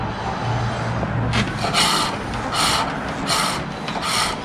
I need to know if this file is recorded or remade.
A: recorded